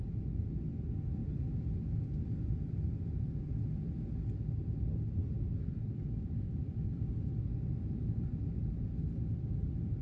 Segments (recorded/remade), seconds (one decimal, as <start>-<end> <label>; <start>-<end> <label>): 0.0-10.0 recorded